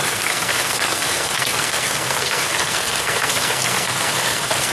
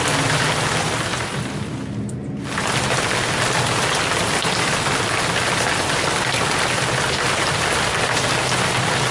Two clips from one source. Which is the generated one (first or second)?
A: first